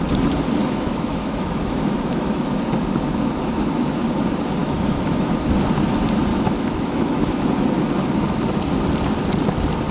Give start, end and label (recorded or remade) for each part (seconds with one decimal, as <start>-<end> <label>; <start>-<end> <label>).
0.0-0.6 recorded; 0.6-2.6 remade; 2.6-4.6 recorded; 4.6-5.3 remade; 5.3-6.3 recorded; 6.3-7.5 remade; 7.5-9.9 recorded